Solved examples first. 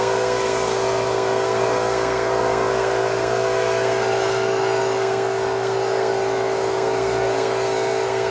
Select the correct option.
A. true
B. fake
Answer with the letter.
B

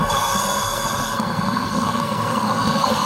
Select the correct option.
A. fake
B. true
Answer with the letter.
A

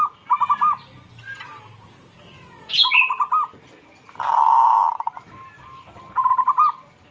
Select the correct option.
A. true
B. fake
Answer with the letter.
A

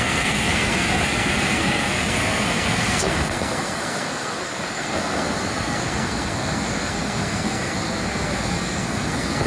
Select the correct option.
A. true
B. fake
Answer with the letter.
B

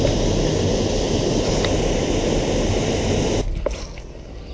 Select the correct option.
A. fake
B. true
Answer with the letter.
B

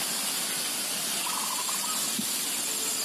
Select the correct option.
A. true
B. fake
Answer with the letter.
A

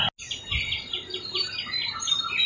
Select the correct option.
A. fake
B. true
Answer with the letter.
B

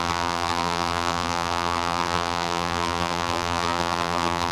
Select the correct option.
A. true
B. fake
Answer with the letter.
B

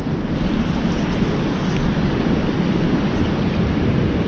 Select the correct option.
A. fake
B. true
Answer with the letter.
B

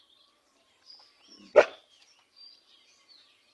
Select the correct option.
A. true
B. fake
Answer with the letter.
A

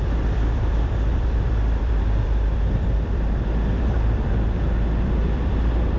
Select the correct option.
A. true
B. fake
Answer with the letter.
B